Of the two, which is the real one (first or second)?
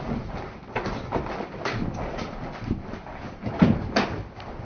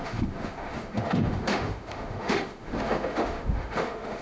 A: first